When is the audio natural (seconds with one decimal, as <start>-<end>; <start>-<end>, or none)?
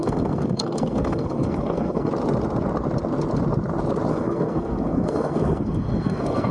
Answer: 2.1-4.1